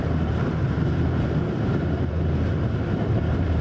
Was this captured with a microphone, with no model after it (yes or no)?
no